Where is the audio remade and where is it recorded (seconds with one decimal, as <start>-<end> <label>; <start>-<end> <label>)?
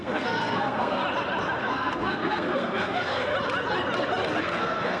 0.0-1.0 remade; 1.0-1.6 recorded; 1.6-3.3 remade; 3.3-4.4 recorded; 4.4-5.0 remade